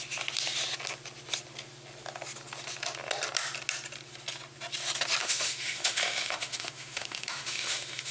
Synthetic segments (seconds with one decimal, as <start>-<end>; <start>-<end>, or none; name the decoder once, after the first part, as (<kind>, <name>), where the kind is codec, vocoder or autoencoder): 5.2-8.1 (autoencoder, DAC-VAE)